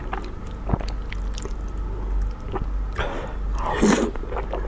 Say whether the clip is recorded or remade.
recorded